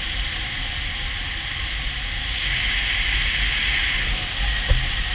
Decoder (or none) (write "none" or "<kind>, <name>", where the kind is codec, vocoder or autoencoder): none